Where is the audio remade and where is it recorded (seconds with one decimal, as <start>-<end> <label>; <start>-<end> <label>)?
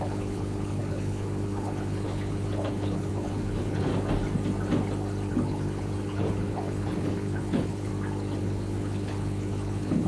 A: 0.0-3.9 remade; 3.9-5.3 recorded; 5.3-7.9 remade; 7.9-8.4 recorded; 8.4-10.1 remade